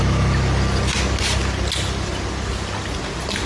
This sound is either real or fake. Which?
real